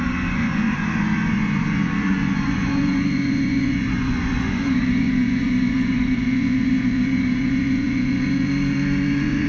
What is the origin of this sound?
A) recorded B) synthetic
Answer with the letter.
B